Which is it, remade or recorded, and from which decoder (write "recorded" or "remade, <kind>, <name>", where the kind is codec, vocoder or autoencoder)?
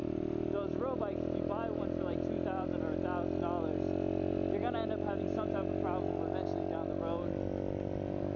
recorded